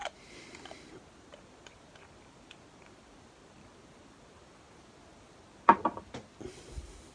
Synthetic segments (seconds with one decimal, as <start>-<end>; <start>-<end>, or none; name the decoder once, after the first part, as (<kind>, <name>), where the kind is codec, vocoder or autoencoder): none